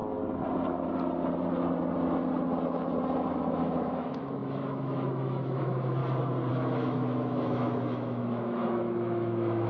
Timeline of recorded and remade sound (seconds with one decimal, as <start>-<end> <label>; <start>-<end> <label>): 0.0-3.3 recorded; 3.3-6.0 remade; 6.0-6.5 recorded; 6.5-9.7 remade